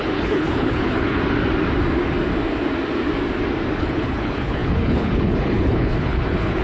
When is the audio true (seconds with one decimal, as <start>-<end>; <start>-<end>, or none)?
1.2-3.8